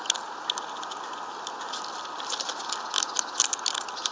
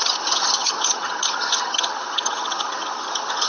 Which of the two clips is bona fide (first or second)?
first